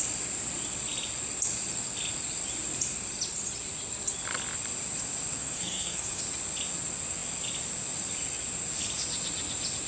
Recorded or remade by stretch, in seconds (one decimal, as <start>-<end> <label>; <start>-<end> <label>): 0.0-5.4 recorded; 5.4-6.2 remade; 6.2-9.9 recorded